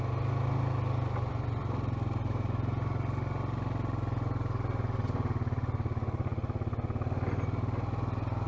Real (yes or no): yes